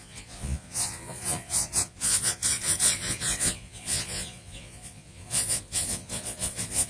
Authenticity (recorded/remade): remade